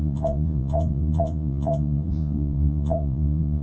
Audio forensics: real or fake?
fake